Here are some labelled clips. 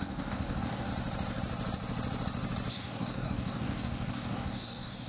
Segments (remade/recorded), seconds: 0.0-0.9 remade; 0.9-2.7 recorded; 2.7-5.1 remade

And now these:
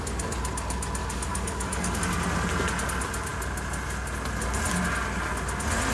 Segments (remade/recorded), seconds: 0.0-1.0 recorded; 1.0-2.0 remade; 2.0-5.9 recorded

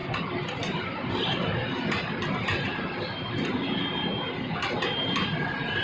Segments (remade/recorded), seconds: 0.0-5.8 recorded

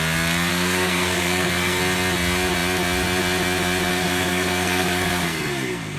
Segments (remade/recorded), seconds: 0.0-0.5 recorded; 0.5-1.8 remade; 1.8-3.9 recorded; 3.9-6.0 remade

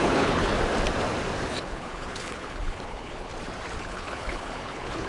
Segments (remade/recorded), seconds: 0.0-0.5 remade; 0.5-1.5 recorded; 1.5-3.3 remade; 3.3-3.8 recorded; 3.8-5.1 remade

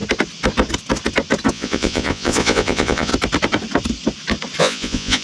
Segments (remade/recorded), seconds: 0.0-1.5 recorded; 1.5-3.1 remade; 3.1-4.6 recorded; 4.6-5.2 remade

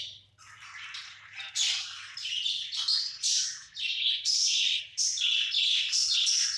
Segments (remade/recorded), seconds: 0.0-6.6 recorded